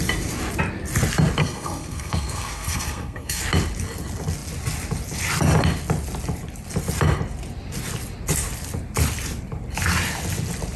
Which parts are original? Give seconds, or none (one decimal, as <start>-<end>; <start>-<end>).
0.0-1.4; 3.4-10.8